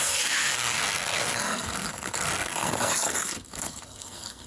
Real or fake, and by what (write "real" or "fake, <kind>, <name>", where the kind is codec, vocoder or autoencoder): fake, codec, SNAC